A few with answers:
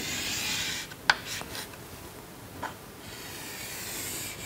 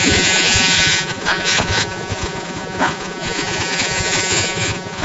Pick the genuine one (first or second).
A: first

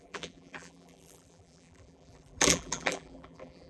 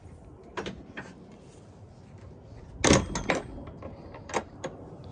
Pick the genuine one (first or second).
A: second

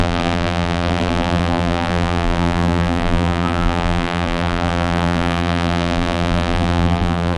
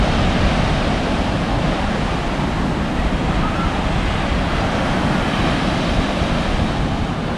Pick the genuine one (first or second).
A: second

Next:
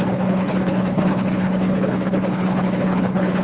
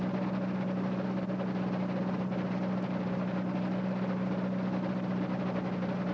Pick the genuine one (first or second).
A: second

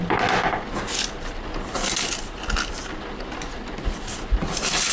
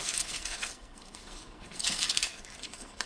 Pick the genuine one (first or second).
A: first